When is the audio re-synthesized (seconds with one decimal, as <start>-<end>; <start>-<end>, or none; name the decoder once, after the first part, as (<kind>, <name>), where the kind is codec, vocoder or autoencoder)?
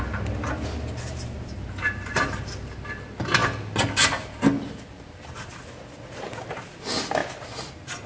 none